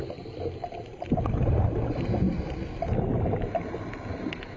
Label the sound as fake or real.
real